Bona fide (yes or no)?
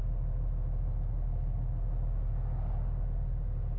yes